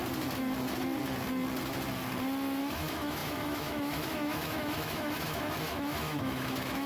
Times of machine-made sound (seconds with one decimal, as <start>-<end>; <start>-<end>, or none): 2.6-6.9